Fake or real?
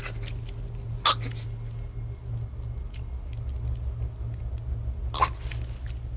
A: real